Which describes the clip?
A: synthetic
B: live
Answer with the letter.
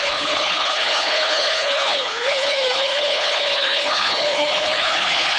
A